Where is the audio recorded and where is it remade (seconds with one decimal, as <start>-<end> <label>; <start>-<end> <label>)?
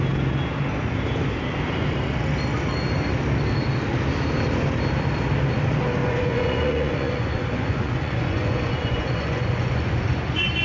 0.0-6.0 recorded; 6.0-10.6 remade